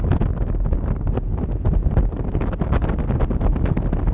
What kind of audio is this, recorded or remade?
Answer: recorded